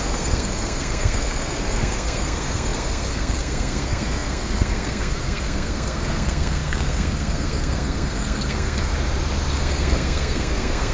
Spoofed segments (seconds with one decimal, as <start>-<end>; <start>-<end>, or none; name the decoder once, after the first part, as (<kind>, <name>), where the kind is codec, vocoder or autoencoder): 0.0-8.9 (codec, SNAC); 9.5-10.9